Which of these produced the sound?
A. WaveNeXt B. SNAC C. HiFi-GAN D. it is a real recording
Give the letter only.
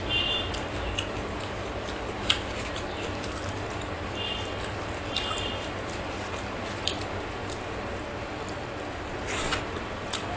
D